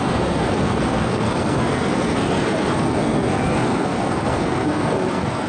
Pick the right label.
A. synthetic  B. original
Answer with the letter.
A